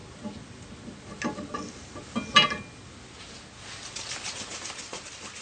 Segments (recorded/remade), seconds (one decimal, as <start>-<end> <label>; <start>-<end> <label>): 0.0-5.4 recorded